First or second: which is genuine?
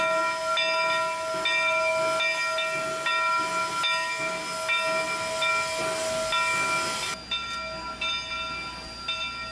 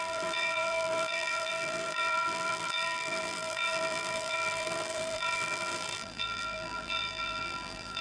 first